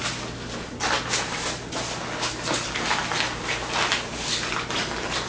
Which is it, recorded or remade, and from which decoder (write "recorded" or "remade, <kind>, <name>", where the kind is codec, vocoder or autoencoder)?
recorded